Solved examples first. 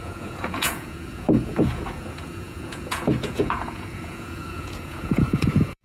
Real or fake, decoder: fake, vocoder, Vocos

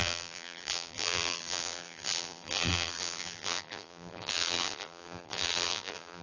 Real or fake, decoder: fake, vocoder, BigVGAN v2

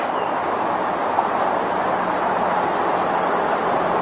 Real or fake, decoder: real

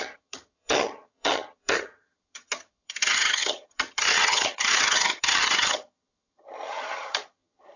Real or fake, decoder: fake, vocoder, HiFi-GAN